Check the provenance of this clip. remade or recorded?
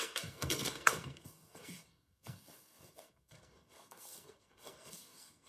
remade